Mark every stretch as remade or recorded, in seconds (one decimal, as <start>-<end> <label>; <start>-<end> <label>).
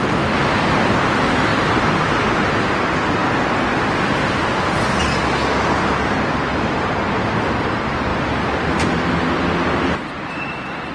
0.0-10.9 recorded